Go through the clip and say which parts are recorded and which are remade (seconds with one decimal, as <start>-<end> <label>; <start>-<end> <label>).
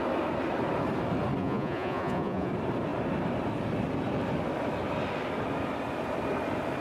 0.0-1.4 recorded; 1.4-2.5 remade; 2.5-6.8 recorded